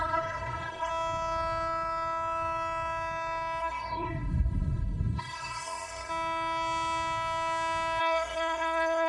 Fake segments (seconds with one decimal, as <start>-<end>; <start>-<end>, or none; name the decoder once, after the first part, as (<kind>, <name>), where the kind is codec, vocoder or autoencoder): 0.0-0.9 (codec, SNAC); 3.6-6.1; 8.0-9.1